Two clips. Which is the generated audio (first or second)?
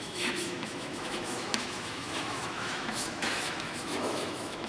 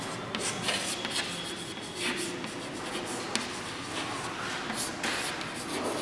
first